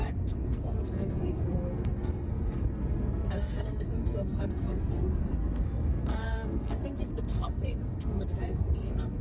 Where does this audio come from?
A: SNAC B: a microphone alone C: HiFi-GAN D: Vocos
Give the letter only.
A